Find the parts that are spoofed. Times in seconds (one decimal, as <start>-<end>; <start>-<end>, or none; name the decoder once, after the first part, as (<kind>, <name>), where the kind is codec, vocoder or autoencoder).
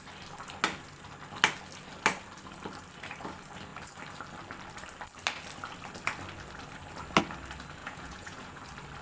7.8-8.6 (vocoder, Vocos)